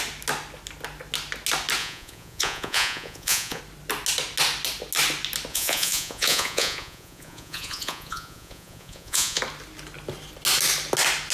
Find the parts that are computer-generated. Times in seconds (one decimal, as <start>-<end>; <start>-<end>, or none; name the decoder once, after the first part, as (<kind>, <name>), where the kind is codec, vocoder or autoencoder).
1.8-3.6 (vocoder, Vocos); 5.5-9.4